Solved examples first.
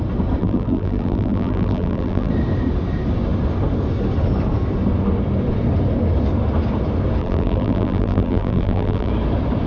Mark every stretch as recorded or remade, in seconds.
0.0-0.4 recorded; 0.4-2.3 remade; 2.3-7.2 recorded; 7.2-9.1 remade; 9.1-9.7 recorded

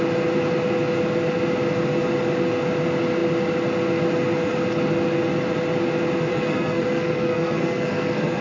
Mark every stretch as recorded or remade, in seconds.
0.0-6.3 recorded; 6.3-8.4 remade

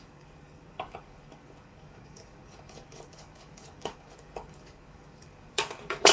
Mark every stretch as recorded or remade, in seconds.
0.0-6.1 remade